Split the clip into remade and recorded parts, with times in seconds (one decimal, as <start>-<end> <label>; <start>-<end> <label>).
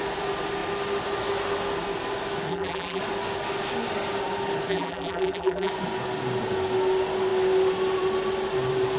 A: 0.0-2.5 recorded; 2.5-3.0 remade; 3.0-4.7 recorded; 4.7-5.7 remade; 5.7-9.0 recorded